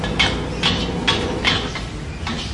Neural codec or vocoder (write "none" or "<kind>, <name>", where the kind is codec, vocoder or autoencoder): none